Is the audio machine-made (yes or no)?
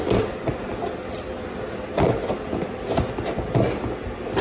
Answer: no